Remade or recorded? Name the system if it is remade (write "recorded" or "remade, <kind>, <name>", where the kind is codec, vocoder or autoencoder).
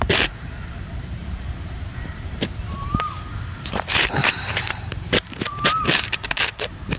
remade, vocoder, BigVGAN v2